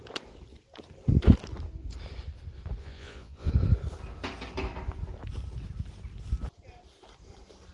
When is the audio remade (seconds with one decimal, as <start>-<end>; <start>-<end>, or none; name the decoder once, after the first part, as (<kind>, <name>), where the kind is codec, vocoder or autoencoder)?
2.8-3.5 (vocoder, Vocos)